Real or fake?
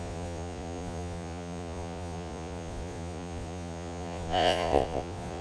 fake